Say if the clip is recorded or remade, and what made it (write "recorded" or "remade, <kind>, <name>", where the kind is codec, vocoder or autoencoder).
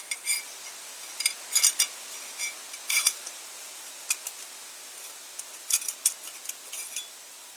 recorded